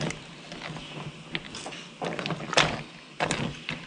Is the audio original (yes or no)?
yes